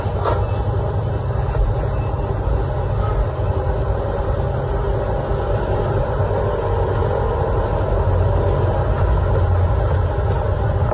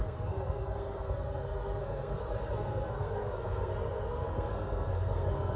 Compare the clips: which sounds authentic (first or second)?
first